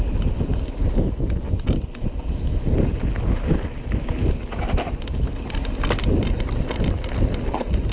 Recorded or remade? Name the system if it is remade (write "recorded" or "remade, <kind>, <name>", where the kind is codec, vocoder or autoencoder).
recorded